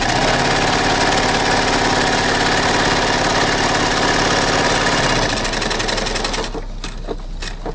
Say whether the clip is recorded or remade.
recorded